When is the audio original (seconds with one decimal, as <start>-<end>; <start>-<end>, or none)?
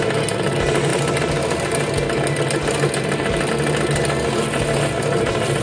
0.0-5.6